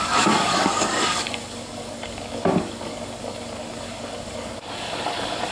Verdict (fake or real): fake